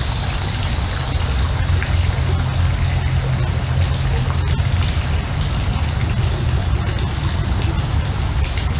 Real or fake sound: real